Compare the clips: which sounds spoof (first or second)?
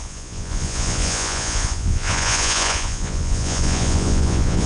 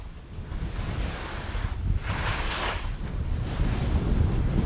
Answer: first